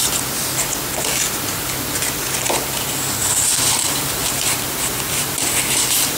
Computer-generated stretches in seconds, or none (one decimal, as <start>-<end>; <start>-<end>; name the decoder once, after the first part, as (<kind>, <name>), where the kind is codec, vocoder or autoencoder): 3.2-6.2 (vocoder, BigVGAN v2)